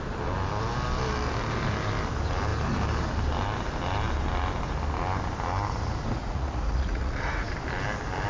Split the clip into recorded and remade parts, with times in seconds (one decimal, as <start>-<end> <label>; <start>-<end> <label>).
0.0-6.2 recorded; 6.2-7.5 remade; 7.5-8.3 recorded